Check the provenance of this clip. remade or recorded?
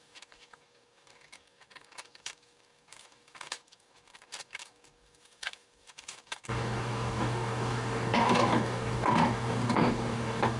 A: remade